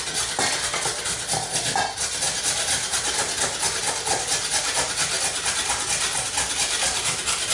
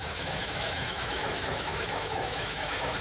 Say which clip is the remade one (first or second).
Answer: second